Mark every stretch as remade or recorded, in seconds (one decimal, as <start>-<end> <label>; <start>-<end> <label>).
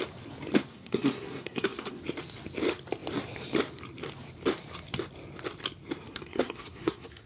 0.0-0.7 recorded; 0.7-2.0 remade; 2.0-6.1 recorded; 6.1-7.3 remade